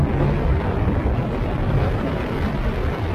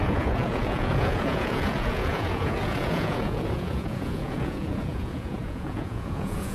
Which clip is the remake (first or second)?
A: second